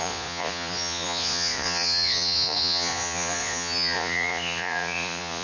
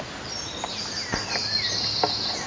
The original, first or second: second